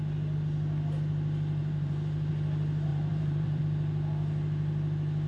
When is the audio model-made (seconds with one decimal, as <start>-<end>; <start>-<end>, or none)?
1.6-2.3; 2.9-3.6